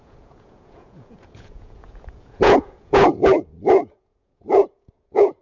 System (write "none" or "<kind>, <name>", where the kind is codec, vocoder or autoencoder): vocoder, Vocos